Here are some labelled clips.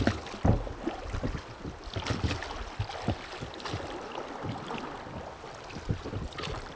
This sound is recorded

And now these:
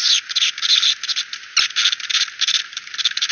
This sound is recorded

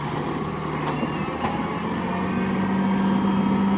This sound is recorded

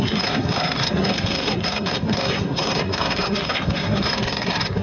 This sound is remade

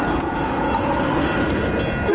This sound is recorded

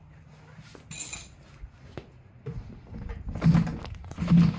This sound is recorded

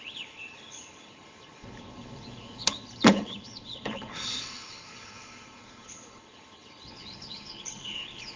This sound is remade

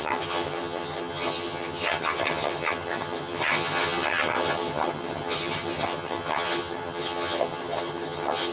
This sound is remade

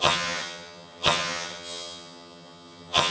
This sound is remade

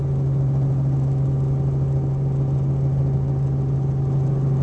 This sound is recorded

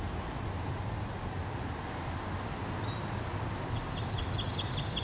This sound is recorded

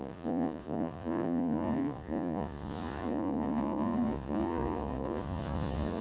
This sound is remade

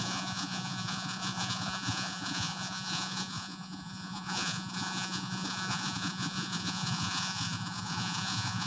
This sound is remade